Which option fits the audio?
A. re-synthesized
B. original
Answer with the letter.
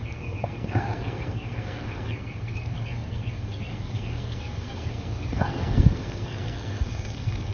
A